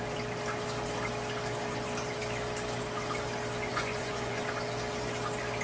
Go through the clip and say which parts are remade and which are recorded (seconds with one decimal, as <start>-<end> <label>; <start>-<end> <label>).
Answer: 0.0-3.7 recorded; 3.7-4.4 remade; 4.4-5.6 recorded